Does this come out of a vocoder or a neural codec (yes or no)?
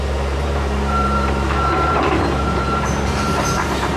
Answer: yes